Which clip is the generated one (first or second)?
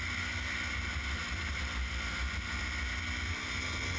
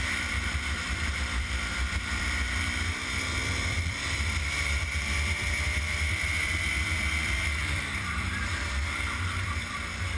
second